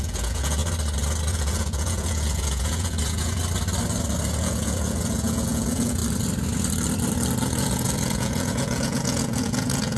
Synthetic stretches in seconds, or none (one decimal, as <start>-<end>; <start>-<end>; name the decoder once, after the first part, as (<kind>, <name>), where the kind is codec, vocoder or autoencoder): 0.0-0.6 (vocoder, Vocos); 1.3-3.4; 4.4-6.0; 7.5-10.0